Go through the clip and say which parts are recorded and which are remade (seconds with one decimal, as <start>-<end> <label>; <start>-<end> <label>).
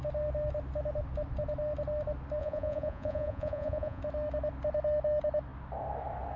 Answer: 0.0-2.4 recorded; 2.4-4.0 remade; 4.0-6.4 recorded